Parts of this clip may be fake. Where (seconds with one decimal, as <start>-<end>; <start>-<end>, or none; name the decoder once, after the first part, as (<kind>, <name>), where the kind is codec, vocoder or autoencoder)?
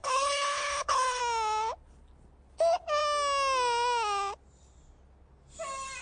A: 0.0-1.2 (codec, HILCodec)